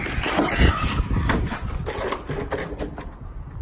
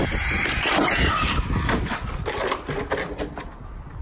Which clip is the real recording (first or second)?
second